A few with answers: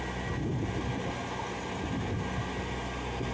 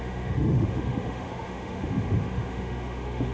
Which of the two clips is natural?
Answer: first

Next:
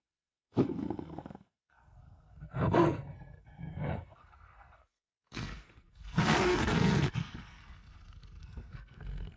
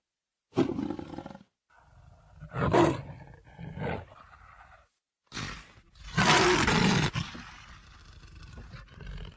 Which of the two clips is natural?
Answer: second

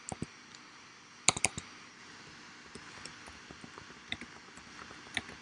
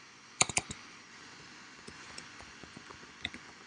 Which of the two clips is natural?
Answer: first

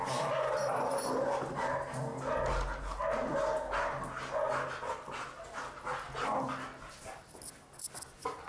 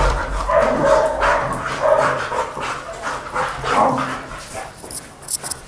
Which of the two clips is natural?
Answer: first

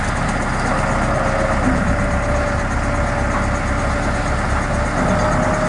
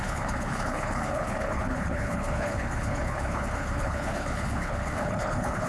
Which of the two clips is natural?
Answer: first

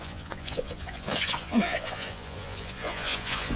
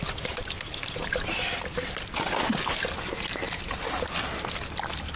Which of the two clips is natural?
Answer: second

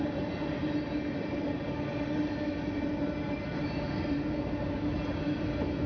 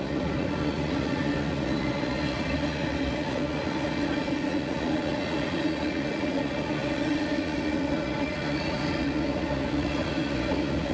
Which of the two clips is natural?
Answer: first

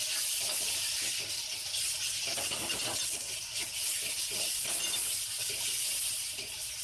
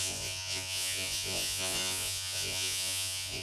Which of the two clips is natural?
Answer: first